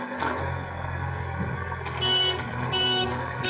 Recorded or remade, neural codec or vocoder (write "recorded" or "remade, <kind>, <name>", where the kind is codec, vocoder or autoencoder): remade, codec, SNAC